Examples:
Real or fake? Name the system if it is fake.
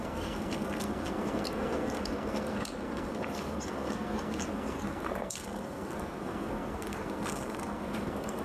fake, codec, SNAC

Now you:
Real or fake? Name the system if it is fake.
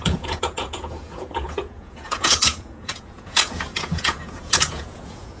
fake, vocoder, Vocos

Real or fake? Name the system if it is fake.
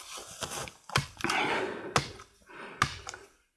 real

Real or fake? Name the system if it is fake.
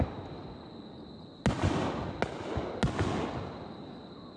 real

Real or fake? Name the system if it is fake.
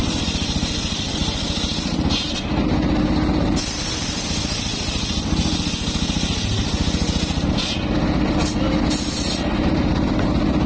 real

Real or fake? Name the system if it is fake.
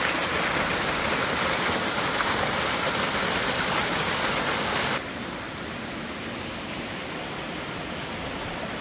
real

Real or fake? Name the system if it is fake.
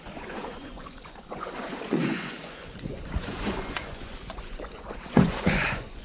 fake, vocoder, Vocos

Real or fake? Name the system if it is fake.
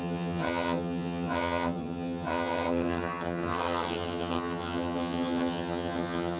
fake, vocoder, HiFi-GAN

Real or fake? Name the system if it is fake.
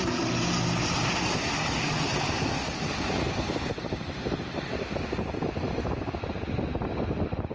real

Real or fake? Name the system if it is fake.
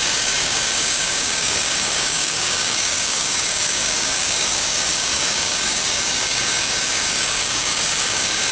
fake, codec, DAC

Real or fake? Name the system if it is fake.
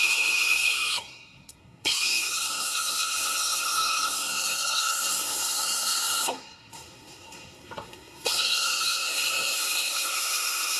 fake, codec, SNAC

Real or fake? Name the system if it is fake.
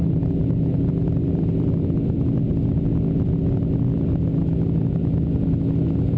real